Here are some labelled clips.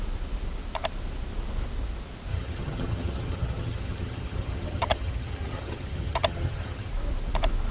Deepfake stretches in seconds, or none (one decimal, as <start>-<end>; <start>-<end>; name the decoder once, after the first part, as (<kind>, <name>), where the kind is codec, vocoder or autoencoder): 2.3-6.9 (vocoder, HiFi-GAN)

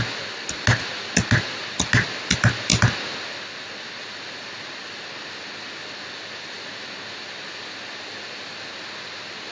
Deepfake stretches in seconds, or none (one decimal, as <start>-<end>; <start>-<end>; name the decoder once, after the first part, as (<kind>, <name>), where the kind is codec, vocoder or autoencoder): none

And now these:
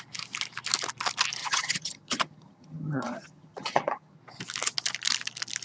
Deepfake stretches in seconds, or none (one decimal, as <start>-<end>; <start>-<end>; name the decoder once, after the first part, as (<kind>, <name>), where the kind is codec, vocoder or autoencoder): 1.4-4.2 (vocoder, HiFi-GAN)

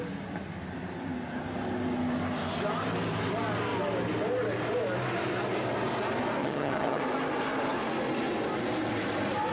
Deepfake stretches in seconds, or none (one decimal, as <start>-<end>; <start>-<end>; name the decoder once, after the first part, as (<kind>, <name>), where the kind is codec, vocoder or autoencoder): 6.4-7.0 (vocoder, HiFi-GAN)

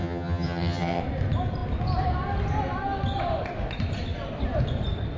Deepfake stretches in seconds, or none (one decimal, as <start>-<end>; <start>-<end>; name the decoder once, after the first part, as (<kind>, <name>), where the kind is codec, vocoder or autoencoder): 0.0-1.0 (vocoder, HiFi-GAN)

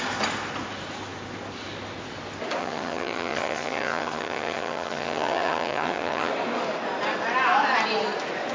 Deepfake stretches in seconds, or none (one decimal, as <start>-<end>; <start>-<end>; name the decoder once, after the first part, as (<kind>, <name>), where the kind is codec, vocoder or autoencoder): 2.6-6.3 (vocoder, HiFi-GAN)

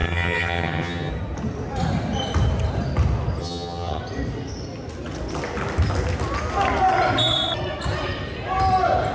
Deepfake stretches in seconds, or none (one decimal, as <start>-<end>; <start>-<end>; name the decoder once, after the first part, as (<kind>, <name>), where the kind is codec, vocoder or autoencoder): 0.0-1.1 (vocoder, HiFi-GAN); 3.4-4.0